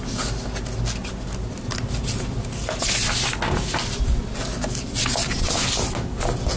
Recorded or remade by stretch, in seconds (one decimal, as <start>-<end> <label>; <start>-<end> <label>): 0.0-6.6 recorded